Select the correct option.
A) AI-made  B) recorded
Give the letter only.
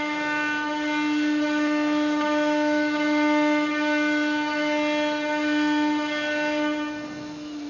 B